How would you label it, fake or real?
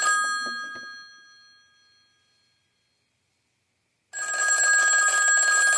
real